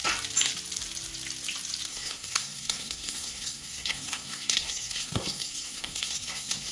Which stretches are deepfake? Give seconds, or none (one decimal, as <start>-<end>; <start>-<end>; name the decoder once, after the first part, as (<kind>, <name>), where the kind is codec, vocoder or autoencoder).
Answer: 1.9-6.7 (codec, SNAC)